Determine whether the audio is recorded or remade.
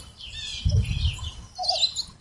recorded